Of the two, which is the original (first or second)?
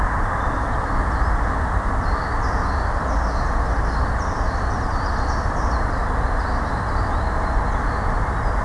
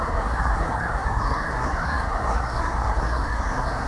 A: first